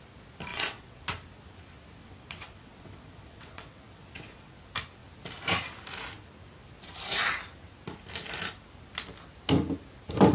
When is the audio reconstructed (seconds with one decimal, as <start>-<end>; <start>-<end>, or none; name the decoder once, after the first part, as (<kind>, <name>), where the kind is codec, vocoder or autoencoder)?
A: 0.5-1.0 (vocoder, WaveNeXt); 2.0-4.5